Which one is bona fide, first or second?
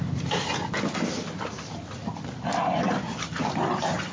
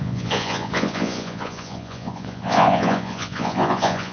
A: first